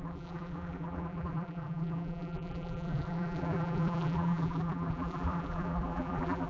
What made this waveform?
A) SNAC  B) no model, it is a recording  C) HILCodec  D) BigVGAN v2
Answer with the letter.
D